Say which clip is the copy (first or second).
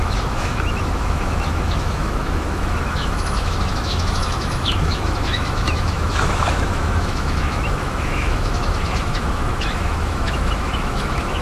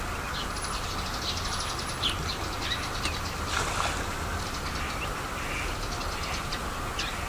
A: first